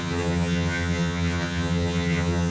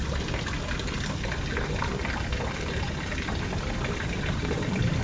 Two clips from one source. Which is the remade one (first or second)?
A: first